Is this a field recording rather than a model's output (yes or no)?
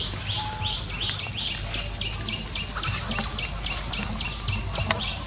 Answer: yes